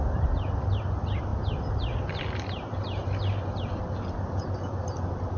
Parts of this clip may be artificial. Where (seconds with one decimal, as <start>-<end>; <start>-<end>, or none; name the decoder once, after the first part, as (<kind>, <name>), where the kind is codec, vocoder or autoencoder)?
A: none